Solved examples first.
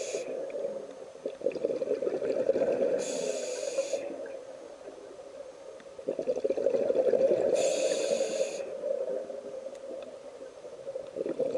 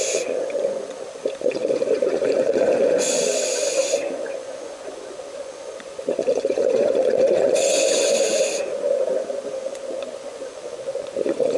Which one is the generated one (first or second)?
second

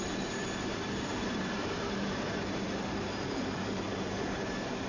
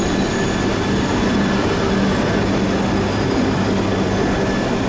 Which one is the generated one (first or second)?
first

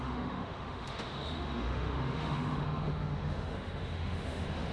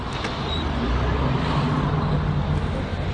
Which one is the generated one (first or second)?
first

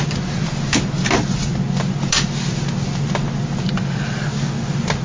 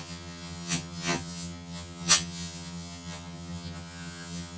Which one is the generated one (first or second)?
second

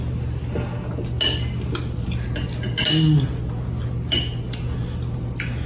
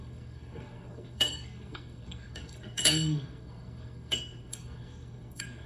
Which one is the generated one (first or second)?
second